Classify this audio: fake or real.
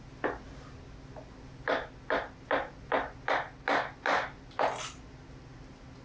real